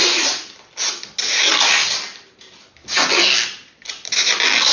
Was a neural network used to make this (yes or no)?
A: no